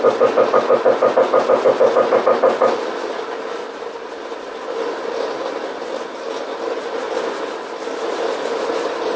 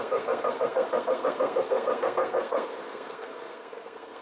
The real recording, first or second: first